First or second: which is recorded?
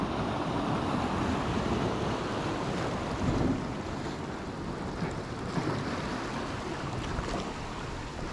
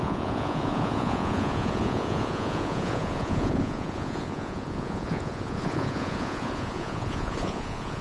first